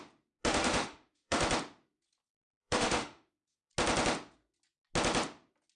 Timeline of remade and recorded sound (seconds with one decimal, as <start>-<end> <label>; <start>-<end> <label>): 0.0-0.4 recorded; 0.4-1.4 remade; 1.4-2.6 recorded; 2.6-3.7 remade; 3.7-5.8 recorded